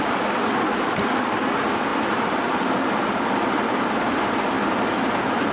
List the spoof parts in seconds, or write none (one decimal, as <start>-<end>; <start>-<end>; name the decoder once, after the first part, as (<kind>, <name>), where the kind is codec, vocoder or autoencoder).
none